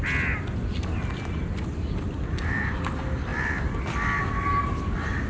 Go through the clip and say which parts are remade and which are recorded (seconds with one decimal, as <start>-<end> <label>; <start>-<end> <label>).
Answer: 0.0-5.3 recorded